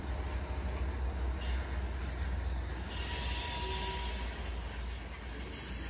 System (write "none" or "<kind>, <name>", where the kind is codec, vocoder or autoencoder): none